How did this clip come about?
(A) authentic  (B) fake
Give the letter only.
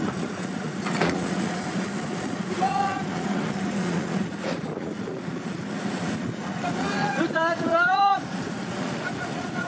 B